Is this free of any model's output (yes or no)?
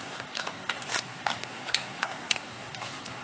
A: no